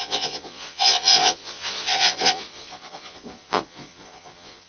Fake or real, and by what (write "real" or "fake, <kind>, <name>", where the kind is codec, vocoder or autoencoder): fake, vocoder, Vocos